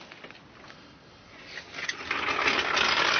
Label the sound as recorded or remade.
recorded